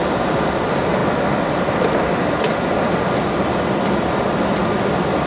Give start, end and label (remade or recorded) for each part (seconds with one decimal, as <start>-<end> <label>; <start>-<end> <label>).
0.0-5.3 recorded